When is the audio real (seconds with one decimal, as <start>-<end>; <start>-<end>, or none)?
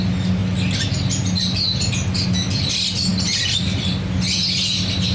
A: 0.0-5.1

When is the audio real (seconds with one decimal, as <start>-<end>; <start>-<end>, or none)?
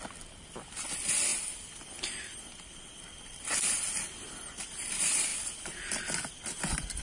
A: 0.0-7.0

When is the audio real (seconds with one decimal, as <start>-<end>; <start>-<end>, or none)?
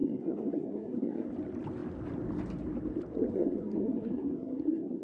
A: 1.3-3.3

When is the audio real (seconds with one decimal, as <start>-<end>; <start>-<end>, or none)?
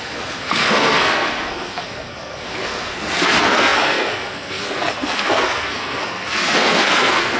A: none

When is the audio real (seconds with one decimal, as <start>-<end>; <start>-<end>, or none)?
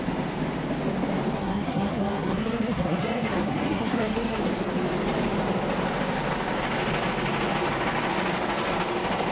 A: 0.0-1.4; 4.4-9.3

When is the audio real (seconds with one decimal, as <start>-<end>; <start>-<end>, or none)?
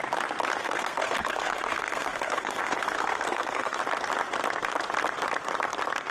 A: 0.0-0.6; 3.8-6.1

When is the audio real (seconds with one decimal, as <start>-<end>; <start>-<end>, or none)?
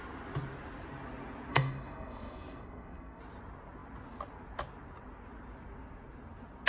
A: 0.0-1.5; 3.2-6.7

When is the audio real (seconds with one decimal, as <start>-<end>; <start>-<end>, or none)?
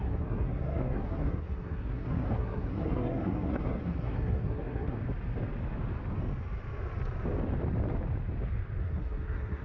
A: 5.0-8.8